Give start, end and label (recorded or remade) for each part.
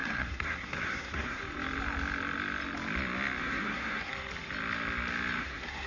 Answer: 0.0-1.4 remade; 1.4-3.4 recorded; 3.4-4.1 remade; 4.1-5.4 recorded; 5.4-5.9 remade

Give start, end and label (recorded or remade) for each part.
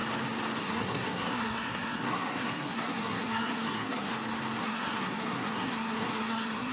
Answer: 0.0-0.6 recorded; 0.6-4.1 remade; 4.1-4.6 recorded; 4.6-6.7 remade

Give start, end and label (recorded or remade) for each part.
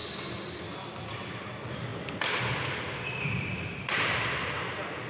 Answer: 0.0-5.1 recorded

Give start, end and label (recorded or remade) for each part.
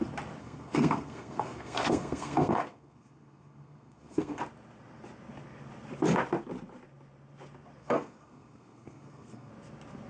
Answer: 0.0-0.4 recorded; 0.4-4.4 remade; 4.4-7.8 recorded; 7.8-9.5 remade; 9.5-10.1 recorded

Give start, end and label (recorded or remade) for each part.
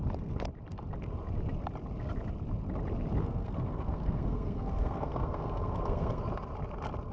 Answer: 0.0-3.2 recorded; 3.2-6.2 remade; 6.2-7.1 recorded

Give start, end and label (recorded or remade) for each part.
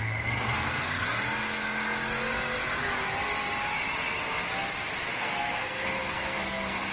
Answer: 0.0-1.0 remade; 1.0-5.1 recorded; 5.1-6.9 remade